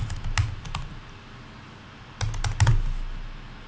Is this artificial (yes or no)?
no